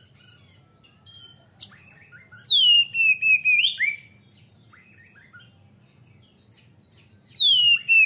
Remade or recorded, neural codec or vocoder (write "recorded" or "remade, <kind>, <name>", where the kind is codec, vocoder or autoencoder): recorded